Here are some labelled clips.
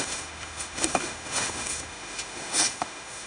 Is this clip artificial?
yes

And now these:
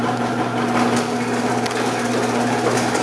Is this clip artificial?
no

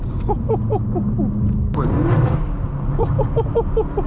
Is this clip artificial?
no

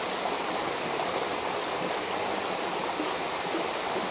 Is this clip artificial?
no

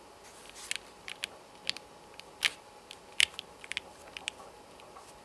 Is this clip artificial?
no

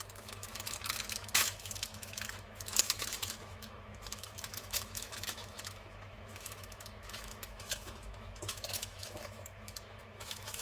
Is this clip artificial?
yes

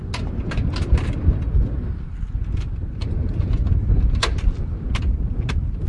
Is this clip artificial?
no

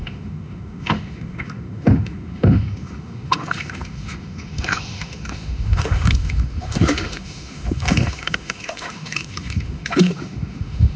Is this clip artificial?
yes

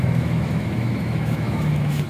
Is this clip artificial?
yes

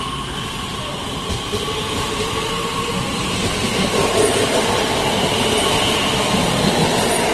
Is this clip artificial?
no